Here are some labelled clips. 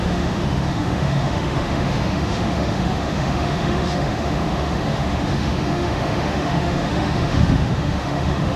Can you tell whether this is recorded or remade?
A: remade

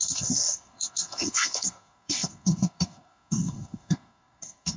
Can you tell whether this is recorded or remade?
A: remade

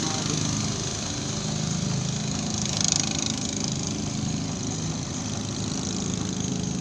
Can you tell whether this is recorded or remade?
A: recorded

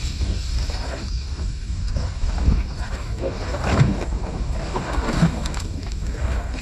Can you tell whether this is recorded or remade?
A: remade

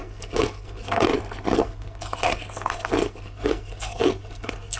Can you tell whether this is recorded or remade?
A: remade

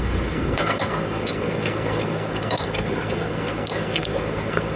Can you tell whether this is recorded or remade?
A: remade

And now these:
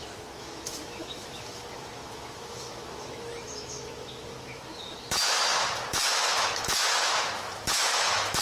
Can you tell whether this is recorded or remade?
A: remade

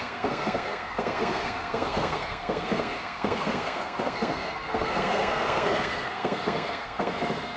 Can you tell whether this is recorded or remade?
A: remade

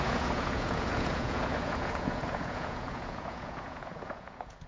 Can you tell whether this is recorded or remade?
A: remade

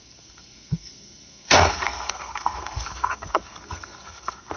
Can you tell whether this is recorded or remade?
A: remade